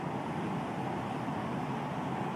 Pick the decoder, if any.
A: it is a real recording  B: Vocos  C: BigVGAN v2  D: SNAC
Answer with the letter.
C